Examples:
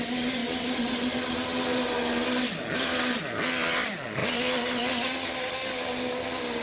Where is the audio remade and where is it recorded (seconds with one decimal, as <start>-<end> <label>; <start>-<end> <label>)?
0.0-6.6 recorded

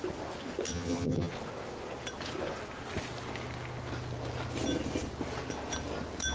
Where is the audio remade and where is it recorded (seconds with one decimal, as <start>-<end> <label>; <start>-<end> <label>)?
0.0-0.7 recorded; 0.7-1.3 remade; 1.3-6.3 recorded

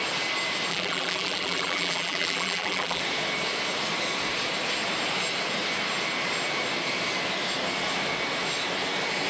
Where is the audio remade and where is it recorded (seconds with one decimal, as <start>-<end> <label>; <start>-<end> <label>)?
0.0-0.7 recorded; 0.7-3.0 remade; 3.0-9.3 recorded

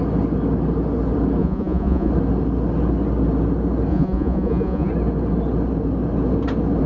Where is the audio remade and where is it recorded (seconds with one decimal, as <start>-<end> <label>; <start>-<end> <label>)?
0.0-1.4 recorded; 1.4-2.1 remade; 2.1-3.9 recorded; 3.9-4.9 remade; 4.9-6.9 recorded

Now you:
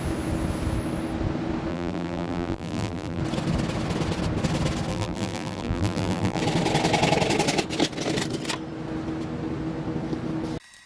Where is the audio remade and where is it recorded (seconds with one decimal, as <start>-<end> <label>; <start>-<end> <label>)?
0.0-1.7 recorded; 1.7-3.2 remade; 3.2-4.9 recorded; 4.9-6.4 remade; 6.4-10.9 recorded